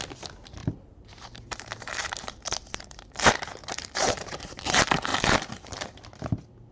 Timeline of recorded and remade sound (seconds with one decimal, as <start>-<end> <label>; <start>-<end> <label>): 0.0-0.6 recorded; 0.6-4.6 remade; 4.6-5.1 recorded; 5.1-6.0 remade; 6.0-6.7 recorded